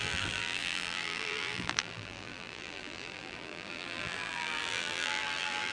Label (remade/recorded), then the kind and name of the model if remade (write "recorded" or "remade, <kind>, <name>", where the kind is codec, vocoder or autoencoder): remade, vocoder, BigVGAN v2